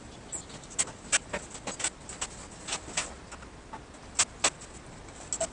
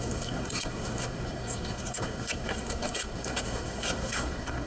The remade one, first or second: second